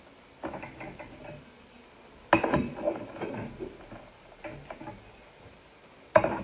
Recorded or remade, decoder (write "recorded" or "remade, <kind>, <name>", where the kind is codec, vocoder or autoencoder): recorded